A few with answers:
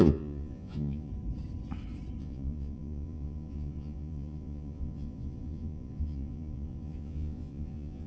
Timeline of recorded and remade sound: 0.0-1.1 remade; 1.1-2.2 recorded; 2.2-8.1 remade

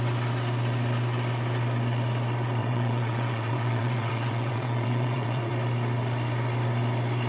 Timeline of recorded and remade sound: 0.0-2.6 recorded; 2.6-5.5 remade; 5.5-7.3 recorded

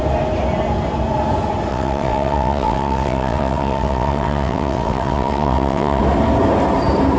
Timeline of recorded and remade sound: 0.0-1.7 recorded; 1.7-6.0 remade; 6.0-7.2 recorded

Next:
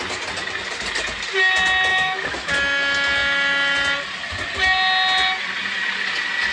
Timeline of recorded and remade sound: 0.0-1.9 recorded; 1.9-2.5 remade; 2.5-6.5 recorded

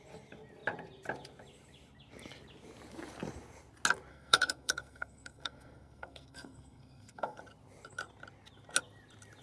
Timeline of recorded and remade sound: 0.0-4.1 recorded; 4.1-7.4 remade; 7.4-9.4 recorded

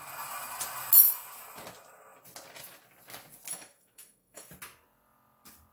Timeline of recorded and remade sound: 0.0-3.5 recorded; 3.5-4.5 remade; 4.5-5.7 recorded